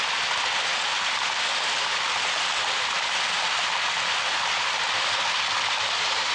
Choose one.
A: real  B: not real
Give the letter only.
B